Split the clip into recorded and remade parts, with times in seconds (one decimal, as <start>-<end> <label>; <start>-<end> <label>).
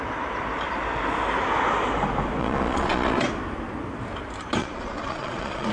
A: 0.0-2.4 recorded; 2.4-3.2 remade; 3.2-4.6 recorded; 4.6-5.7 remade